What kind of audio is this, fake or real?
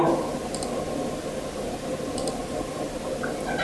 real